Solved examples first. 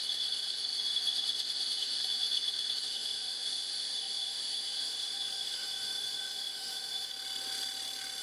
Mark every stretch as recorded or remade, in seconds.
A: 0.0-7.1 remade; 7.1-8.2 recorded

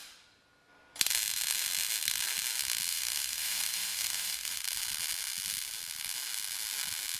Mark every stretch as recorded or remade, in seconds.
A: 0.0-2.9 recorded; 2.9-4.6 remade; 4.6-7.2 recorded